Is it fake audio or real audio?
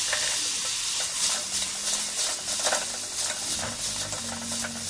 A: real